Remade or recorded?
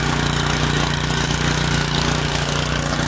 remade